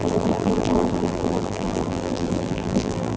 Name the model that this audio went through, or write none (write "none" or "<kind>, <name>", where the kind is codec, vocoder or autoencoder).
vocoder, BigVGAN v2